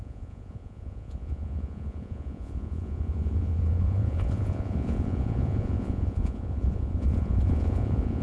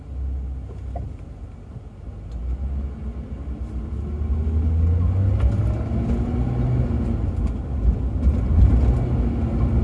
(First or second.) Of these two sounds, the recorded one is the second